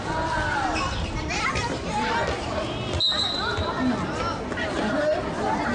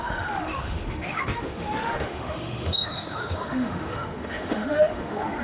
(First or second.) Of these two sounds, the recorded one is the first